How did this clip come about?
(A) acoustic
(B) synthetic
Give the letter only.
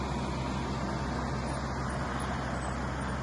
A